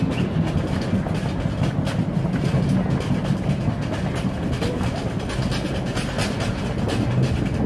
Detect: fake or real real